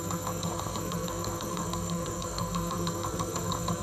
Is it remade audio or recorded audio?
remade